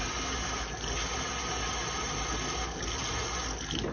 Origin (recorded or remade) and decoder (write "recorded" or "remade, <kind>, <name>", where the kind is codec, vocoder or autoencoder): recorded